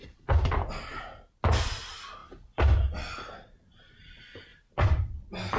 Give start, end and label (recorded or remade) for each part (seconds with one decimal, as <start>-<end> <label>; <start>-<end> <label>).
0.0-5.6 recorded